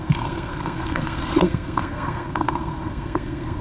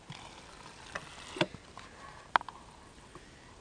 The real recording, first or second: second